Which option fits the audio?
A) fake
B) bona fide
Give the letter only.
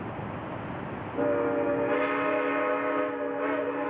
B